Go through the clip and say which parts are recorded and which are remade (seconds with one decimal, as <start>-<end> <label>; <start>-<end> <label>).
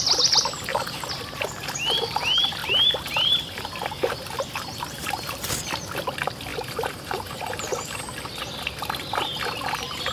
0.0-0.7 recorded; 0.7-1.8 remade; 1.8-2.6 recorded; 2.6-5.5 remade; 5.5-6.5 recorded; 6.5-8.4 remade; 8.4-10.1 recorded